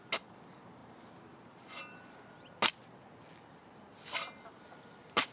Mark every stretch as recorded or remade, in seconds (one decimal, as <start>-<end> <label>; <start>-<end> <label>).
0.0-5.3 recorded